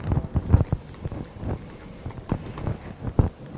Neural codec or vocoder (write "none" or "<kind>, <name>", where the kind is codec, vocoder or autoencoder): none